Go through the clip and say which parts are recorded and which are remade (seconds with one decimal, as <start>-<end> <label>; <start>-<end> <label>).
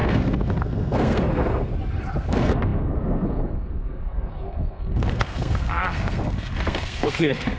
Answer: 0.0-1.7 remade; 1.7-2.2 recorded; 2.2-7.6 remade